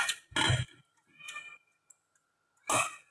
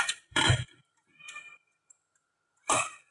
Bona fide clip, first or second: first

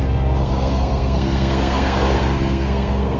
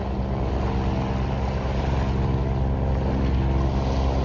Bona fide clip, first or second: second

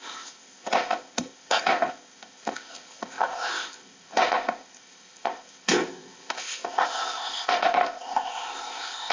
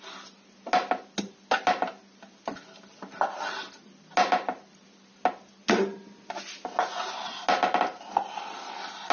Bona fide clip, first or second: second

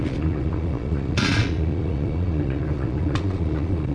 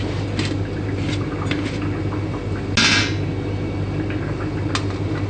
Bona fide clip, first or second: second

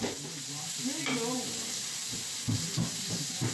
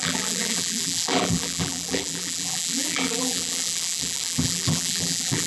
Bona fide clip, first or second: first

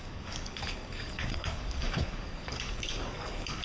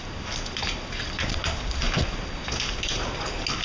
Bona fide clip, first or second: second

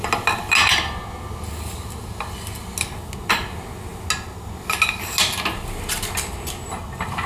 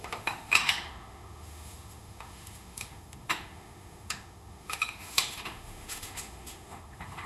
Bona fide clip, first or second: first